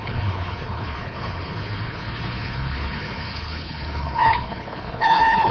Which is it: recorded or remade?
remade